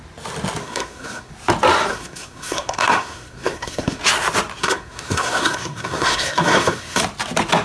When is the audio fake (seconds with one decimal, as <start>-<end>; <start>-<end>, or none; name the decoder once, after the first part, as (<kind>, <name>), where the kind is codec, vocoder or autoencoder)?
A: 0.6-1.3 (codec, SNAC); 1.9-4.0; 4.6-7.0